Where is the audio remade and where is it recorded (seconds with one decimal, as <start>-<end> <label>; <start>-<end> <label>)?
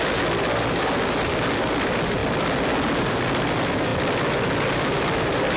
0.0-5.6 recorded